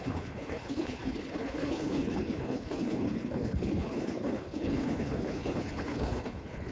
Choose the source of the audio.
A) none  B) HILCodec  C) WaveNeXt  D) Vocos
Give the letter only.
B